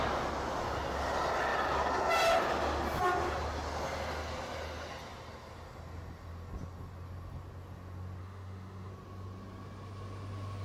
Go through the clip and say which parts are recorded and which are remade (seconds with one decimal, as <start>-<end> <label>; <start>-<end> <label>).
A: 0.0-8.2 recorded; 8.2-8.9 remade; 8.9-10.6 recorded